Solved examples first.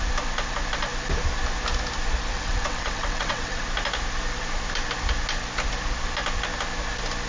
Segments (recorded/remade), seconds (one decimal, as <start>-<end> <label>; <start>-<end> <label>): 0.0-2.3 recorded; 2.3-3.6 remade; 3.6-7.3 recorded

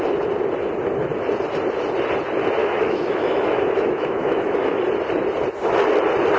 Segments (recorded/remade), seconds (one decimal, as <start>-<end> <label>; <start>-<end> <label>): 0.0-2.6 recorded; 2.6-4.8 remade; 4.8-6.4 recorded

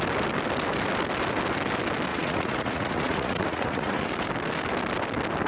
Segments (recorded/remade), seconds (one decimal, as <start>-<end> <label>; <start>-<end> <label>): 0.0-2.1 recorded; 2.1-4.0 remade; 4.0-5.5 recorded